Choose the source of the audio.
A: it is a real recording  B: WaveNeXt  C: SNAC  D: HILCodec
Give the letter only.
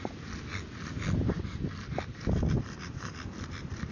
A